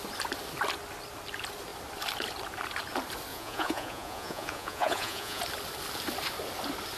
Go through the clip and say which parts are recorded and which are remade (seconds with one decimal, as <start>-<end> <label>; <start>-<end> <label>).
0.0-3.3 recorded; 3.3-5.4 remade; 5.4-7.0 recorded